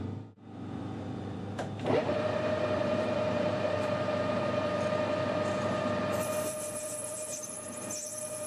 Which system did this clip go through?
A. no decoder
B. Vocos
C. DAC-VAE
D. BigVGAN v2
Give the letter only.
D